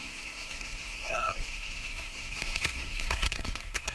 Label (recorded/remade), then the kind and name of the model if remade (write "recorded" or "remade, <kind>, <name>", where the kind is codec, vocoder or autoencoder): remade, codec, SNAC